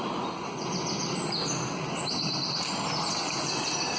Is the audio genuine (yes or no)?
yes